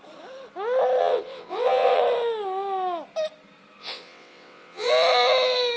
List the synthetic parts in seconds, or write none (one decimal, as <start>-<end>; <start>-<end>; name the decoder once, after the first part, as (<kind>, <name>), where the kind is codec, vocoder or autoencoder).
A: 1.0-2.0 (vocoder, WaveNeXt); 3.8-4.9